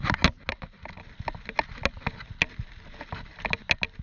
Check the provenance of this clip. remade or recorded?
recorded